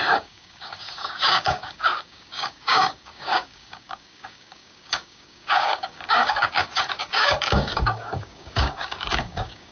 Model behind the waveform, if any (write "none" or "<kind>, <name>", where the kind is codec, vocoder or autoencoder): codec, DAC